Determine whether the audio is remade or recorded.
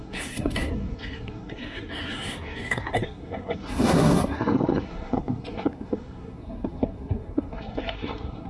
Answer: remade